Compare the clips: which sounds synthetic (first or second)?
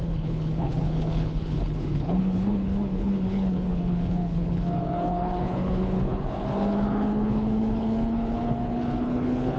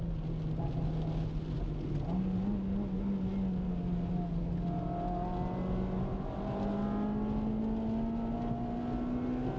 first